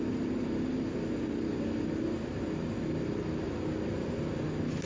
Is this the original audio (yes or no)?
yes